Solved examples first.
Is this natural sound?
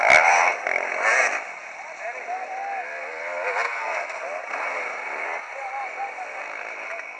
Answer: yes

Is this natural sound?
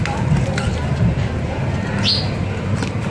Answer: yes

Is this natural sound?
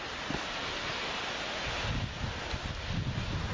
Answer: yes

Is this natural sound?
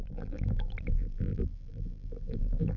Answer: no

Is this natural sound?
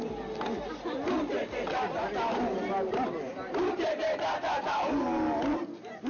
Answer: yes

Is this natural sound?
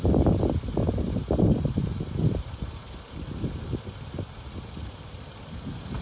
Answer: yes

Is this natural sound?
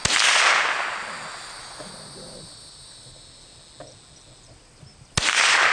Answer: yes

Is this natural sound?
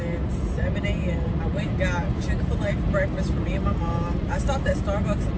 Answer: yes